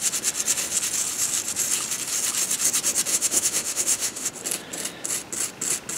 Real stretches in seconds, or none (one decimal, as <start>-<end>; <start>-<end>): 0.0-3.1; 4.3-6.0

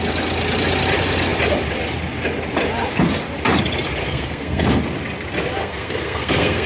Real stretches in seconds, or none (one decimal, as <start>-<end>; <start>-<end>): 0.0-4.0; 4.8-5.6

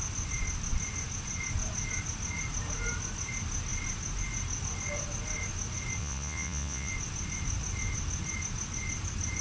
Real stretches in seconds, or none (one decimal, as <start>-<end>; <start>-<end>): 0.0-6.0; 6.9-9.4

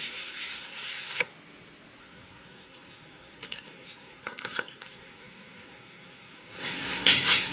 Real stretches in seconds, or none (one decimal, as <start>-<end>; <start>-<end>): 1.3-2.0

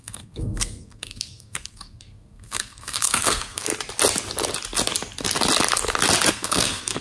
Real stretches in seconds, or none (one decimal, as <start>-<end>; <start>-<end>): 3.7-6.3

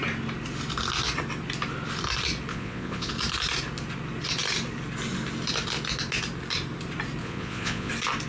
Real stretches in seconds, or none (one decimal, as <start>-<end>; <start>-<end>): 0.0-2.5; 3.1-7.2; 7.9-8.3